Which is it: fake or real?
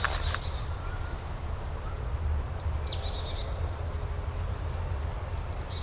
real